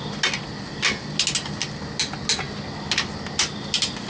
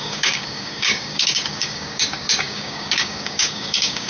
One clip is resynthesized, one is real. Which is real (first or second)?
first